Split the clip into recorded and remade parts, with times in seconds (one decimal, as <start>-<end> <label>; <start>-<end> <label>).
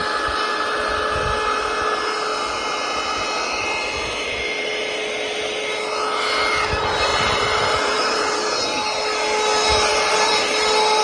0.0-7.1 recorded; 7.1-8.3 remade; 8.3-9.9 recorded; 9.9-11.0 remade